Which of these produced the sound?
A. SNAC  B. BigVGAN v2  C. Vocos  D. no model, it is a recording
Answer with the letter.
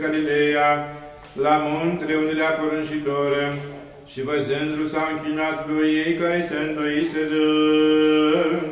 D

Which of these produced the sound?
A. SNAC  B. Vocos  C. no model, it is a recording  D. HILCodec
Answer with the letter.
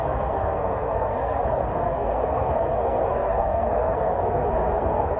A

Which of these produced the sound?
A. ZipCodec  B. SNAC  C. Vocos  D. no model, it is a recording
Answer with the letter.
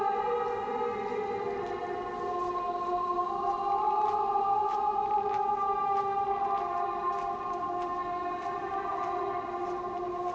D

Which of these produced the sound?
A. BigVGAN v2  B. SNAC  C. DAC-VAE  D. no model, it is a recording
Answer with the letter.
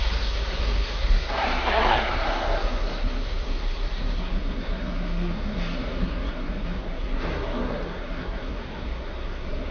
B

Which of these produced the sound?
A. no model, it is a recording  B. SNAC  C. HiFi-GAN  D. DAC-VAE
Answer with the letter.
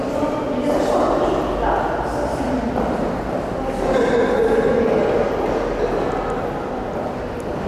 A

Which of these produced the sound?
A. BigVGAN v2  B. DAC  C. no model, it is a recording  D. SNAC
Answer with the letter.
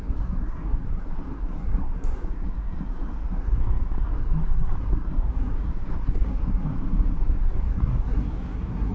D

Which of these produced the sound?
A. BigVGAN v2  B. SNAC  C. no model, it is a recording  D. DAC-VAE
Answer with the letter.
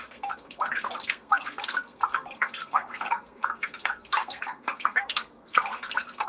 B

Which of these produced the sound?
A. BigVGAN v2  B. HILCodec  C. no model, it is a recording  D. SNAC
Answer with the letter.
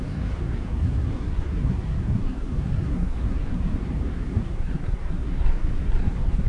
D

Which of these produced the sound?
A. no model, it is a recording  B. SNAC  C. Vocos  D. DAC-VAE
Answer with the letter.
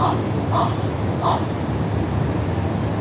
A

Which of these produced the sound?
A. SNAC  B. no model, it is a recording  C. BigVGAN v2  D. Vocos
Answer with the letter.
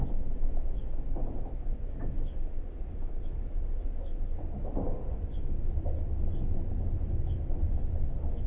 B